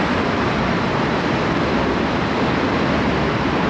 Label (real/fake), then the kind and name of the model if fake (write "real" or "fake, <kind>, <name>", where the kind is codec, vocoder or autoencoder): fake, vocoder, BigVGAN v2